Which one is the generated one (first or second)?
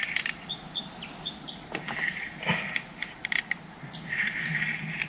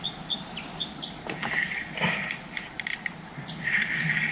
second